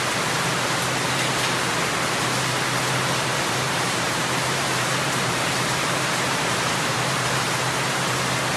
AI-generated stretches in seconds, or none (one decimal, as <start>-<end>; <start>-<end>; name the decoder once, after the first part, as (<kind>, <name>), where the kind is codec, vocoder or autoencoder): 3.3-8.1 (vocoder, BigVGAN v2)